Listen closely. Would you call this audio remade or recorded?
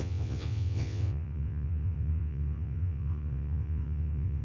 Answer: remade